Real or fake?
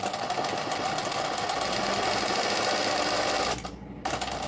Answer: real